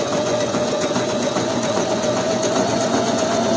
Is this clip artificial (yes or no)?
yes